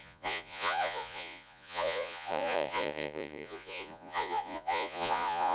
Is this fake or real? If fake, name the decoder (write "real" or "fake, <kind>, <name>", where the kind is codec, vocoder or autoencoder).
fake, vocoder, Vocos